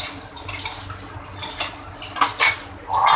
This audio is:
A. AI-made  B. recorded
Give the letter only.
B